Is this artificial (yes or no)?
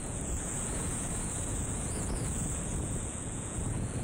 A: yes